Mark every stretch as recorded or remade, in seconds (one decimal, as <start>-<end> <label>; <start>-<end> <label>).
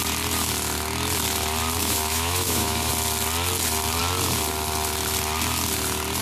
0.0-1.8 recorded; 1.8-2.9 remade; 2.9-6.2 recorded